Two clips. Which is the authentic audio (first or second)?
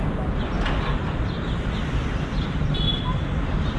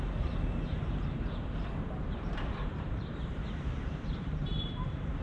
first